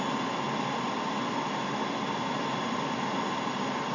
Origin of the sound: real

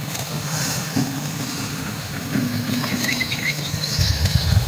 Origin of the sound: fake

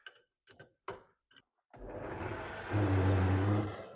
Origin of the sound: real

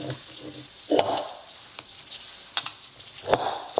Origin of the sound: real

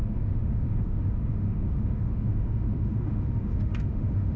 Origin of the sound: fake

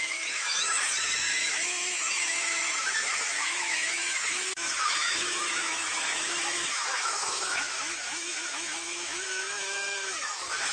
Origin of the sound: fake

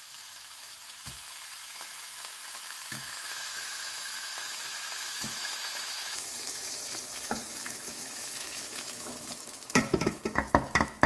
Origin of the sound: fake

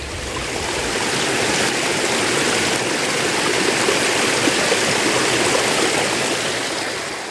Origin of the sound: real